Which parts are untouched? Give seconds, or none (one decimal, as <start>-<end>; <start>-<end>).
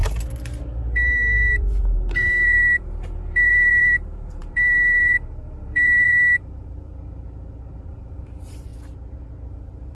0.0-0.6; 6.9-7.9; 8.7-9.5